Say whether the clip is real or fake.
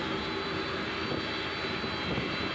real